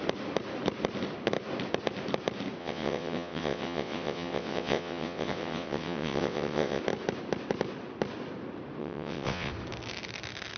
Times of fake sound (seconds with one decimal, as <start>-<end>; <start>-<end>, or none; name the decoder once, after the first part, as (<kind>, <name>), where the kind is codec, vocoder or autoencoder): 2.6-6.8 (vocoder, WaveNeXt); 8.8-9.5